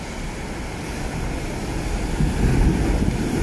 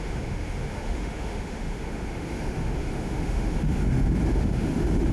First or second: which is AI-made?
second